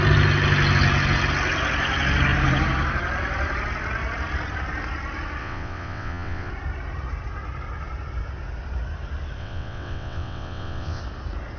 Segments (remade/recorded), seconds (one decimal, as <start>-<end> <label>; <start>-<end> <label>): 0.0-5.4 recorded; 5.4-6.5 remade; 6.5-9.4 recorded; 9.4-11.0 remade; 11.0-11.6 recorded

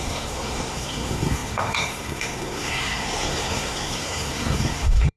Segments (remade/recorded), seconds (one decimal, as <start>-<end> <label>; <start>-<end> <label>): 0.0-5.2 remade

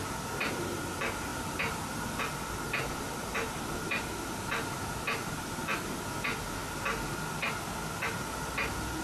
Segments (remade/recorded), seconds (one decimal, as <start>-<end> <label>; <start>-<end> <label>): 0.0-9.0 recorded

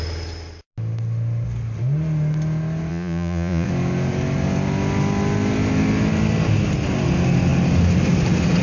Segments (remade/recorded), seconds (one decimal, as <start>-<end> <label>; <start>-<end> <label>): 0.0-2.9 recorded; 2.9-3.7 remade; 3.7-8.6 recorded

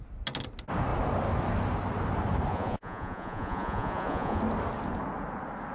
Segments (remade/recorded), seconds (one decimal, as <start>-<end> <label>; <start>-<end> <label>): 0.0-2.5 recorded; 2.5-4.4 remade; 4.4-5.7 recorded

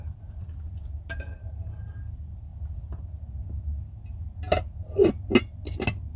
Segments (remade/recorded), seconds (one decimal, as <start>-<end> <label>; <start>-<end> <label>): 0.0-6.2 recorded